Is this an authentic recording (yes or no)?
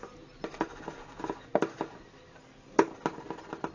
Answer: yes